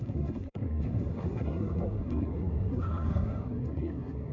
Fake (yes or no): yes